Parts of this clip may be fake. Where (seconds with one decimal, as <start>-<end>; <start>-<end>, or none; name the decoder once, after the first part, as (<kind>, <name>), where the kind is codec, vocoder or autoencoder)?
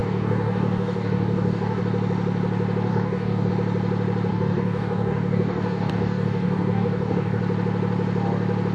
0.0-1.8 (codec, DAC); 2.9-3.5; 4.3-7.4